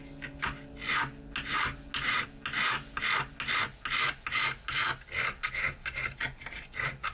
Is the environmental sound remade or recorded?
recorded